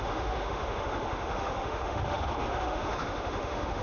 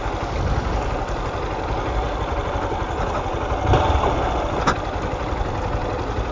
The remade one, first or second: first